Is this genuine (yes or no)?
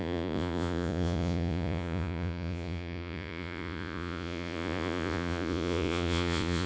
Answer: no